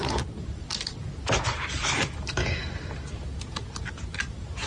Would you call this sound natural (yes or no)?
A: no